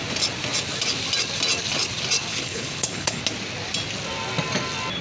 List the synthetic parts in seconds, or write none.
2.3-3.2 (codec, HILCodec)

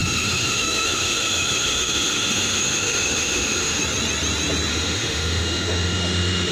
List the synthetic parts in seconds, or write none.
0.0-3.8 (autoencoder, DAC-VAE); 4.7-6.5

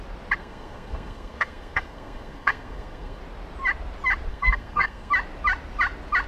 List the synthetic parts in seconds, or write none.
0.4-3.2 (codec, SNAC); 4.3-5.1

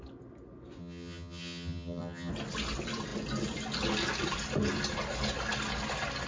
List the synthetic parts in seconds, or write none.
0.8-2.3 (vocoder, HiFi-GAN)

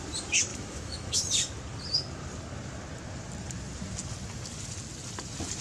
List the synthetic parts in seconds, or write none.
0.5-1.2 (autoencoder, DAC-VAE)

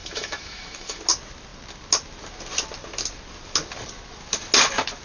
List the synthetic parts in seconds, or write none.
0.0-1.0 (autoencoder, DAC-VAE)

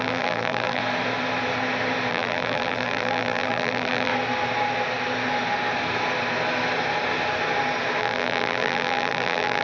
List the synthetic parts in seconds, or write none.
0.0-0.8 (vocoder, BigVGAN v2); 2.1-4.1; 8.0-9.6

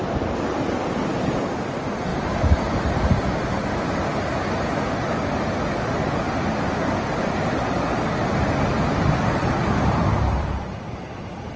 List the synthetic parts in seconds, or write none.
none